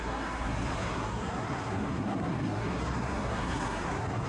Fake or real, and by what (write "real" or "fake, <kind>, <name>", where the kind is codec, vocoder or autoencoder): fake, codec, SNAC